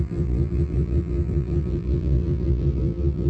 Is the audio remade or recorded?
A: remade